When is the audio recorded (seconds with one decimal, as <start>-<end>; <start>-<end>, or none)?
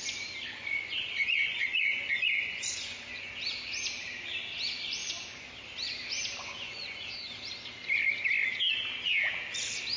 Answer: 0.0-0.6; 3.3-5.0; 5.5-6.4; 7.1-10.0